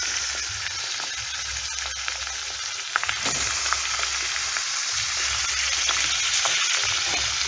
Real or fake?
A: real